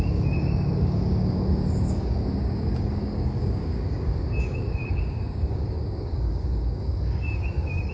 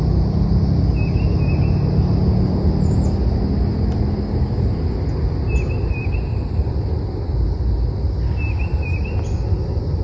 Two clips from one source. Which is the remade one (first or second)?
first